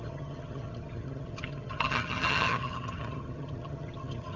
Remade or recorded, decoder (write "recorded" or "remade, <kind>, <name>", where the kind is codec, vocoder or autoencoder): remade, vocoder, HiFi-GAN